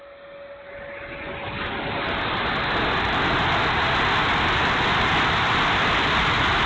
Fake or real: real